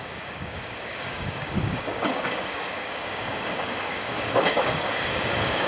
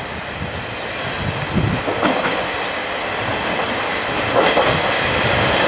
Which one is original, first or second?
second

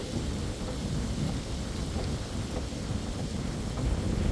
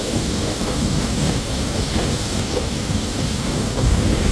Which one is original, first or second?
first